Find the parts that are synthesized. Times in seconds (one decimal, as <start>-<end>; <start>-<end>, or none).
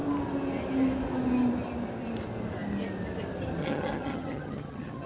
3.6-5.1